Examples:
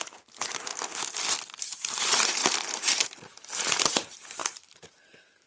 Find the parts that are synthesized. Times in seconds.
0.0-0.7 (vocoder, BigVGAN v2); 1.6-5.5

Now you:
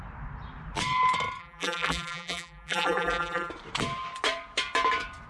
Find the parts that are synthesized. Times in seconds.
1.4-3.5 (vocoder, BigVGAN v2)

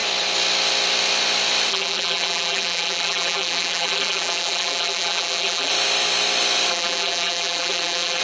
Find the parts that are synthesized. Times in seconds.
1.7-5.7 (vocoder, BigVGAN v2); 6.7-8.2

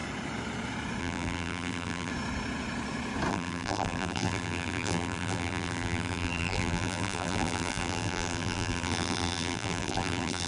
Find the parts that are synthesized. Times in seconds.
1.0-2.1 (vocoder, BigVGAN v2); 3.3-10.5